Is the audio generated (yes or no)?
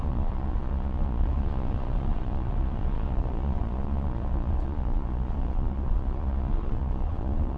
yes